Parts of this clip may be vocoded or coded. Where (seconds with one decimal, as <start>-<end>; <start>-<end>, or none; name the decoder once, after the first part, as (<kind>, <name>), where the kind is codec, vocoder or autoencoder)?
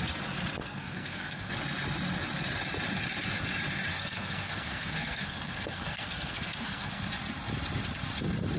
0.6-1.5 (codec, SNAC); 3.9-7.0